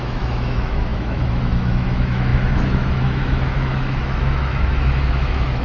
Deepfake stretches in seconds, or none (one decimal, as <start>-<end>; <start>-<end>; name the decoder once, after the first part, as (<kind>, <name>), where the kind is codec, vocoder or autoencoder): 0.0-5.6 (autoencoder, DAC-VAE)